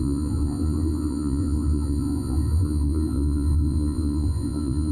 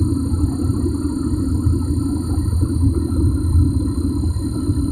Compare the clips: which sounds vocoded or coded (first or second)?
first